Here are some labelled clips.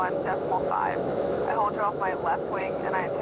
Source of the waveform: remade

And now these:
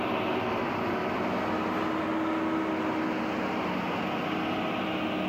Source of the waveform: recorded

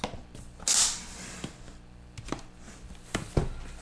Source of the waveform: recorded